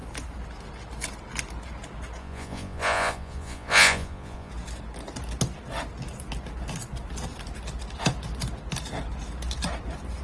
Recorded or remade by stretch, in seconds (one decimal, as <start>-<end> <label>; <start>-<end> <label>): 0.0-2.2 recorded; 2.2-4.5 remade; 4.5-10.2 recorded